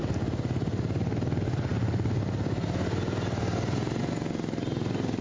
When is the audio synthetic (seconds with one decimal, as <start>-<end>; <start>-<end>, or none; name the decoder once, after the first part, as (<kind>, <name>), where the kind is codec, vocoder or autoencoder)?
none